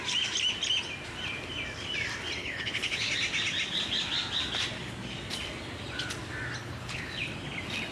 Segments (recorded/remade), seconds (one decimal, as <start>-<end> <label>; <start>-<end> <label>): 0.0-2.4 recorded; 2.4-3.1 remade; 3.1-6.6 recorded; 6.6-7.3 remade; 7.3-7.9 recorded